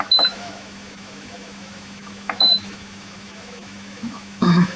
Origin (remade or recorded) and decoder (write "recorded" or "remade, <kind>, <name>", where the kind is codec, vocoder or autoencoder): remade, autoencoder, DAC-VAE